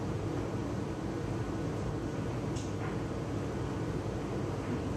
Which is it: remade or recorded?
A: recorded